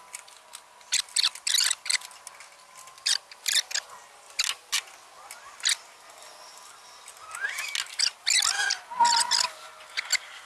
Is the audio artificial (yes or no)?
no